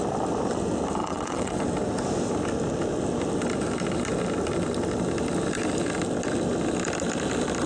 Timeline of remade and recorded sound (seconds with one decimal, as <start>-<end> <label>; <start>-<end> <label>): 0.0-1.0 recorded; 1.0-1.6 remade; 1.6-7.7 recorded